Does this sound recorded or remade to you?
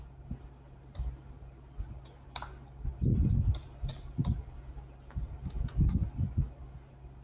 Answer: recorded